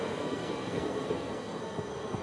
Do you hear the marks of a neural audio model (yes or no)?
yes